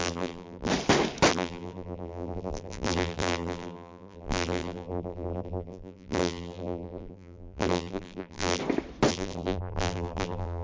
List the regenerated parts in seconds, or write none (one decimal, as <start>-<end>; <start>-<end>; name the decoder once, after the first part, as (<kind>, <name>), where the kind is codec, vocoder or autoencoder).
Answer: 0.0-0.7 (vocoder, BigVGAN v2); 1.3-8.6; 9.1-10.6